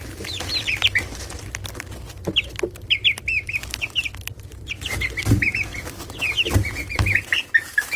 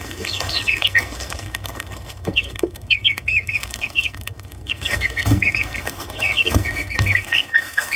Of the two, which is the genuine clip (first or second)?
first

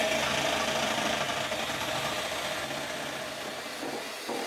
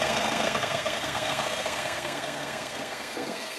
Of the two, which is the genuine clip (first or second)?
first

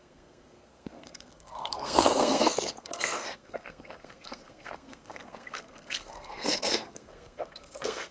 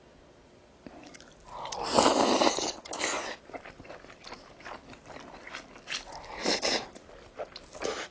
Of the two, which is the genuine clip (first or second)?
second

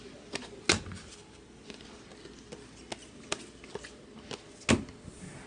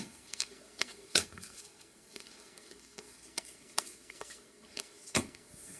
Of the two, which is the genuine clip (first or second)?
first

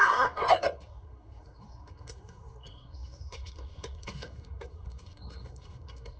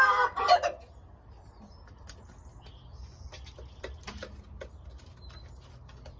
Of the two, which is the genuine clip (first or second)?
second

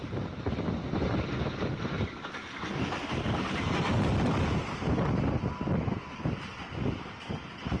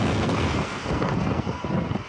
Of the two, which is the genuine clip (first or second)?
first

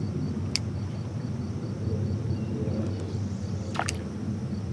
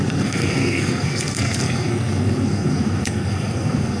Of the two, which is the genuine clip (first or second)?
first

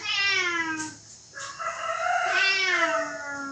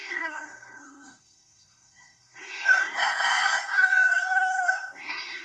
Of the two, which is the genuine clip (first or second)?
first